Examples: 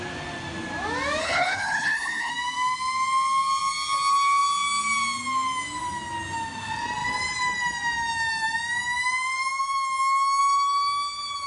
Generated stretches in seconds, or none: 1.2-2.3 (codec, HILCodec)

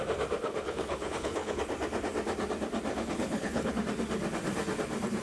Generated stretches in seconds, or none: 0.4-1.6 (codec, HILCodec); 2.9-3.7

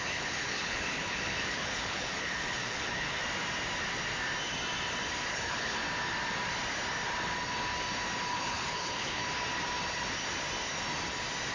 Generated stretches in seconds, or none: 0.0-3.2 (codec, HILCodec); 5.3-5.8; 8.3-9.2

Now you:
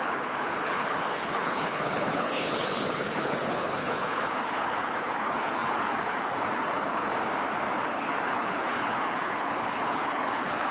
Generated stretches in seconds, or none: 0.0-7.1 (codec, HILCodec); 7.8-10.7

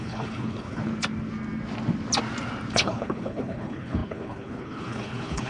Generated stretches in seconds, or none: 0.0-0.9 (codec, HILCodec); 2.7-5.5

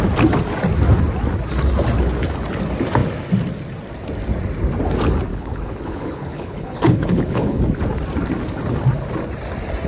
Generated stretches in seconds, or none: 5.3-7.6 (codec, HILCodec)

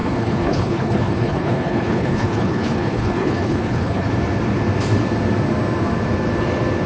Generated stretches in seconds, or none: 0.0-4.1 (codec, HILCodec)